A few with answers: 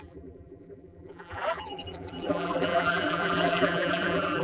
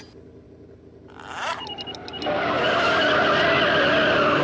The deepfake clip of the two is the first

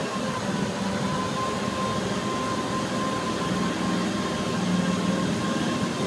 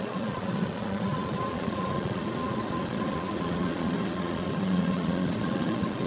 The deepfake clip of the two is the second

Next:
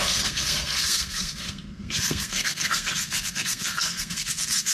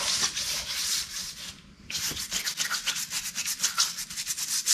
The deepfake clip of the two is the first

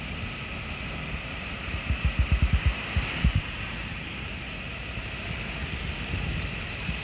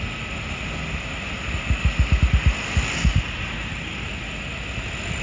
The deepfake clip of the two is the first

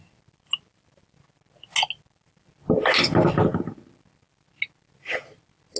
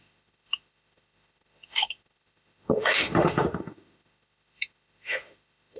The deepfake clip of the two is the second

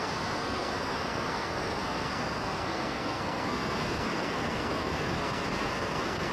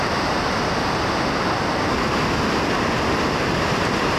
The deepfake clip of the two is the first